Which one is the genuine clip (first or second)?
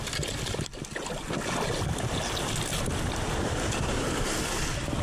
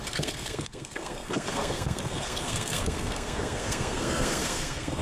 first